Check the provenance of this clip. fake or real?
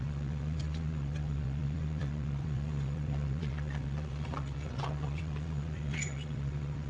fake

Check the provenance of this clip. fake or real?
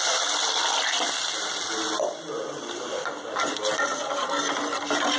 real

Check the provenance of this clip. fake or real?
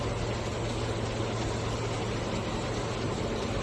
real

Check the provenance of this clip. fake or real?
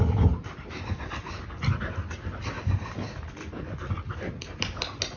real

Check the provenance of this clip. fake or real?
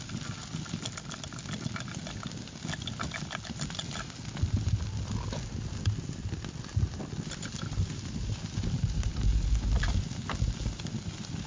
real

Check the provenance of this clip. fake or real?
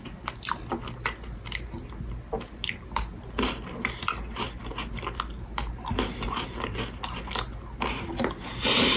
real